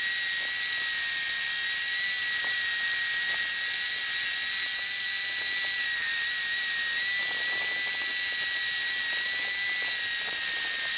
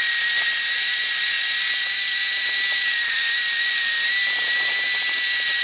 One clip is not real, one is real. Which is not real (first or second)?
second